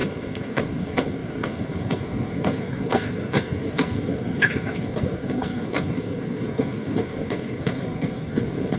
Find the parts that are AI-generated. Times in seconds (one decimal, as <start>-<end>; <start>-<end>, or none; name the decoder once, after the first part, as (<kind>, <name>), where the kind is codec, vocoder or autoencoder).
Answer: 0.0-8.8 (codec, SNAC)